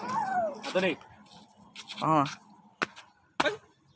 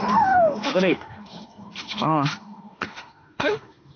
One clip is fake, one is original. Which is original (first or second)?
first